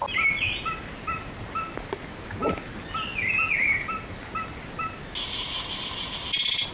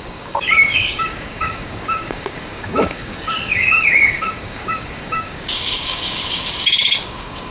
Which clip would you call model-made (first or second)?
second